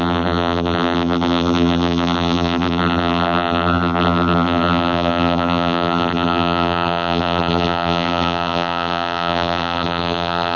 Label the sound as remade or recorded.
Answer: remade